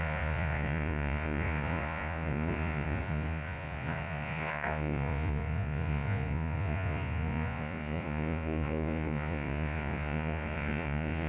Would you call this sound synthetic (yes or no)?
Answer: yes